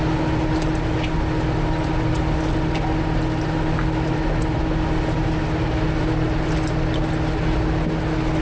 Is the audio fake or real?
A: real